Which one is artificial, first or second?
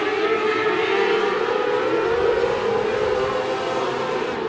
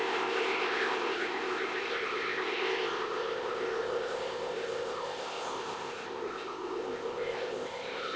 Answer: second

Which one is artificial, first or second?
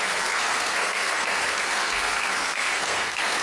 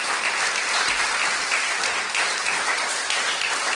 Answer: first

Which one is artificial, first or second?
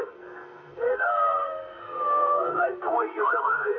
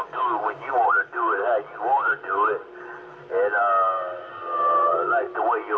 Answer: first